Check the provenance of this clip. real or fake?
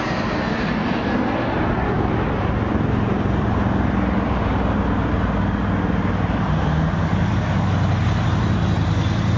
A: real